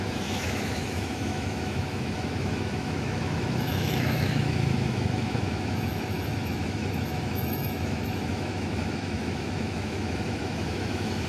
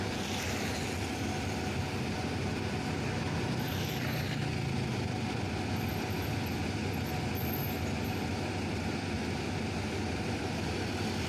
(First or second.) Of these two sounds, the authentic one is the second